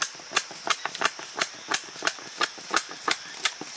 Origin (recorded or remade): recorded